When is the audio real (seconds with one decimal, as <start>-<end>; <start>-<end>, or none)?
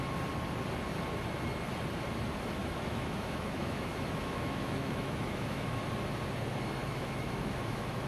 0.0-2.6; 5.8-6.8